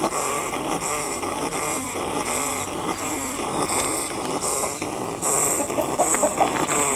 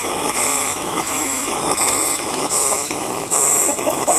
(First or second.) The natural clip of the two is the first